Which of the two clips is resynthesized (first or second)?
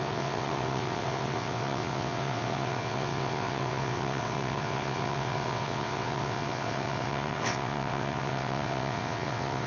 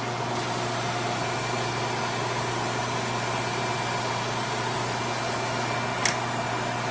first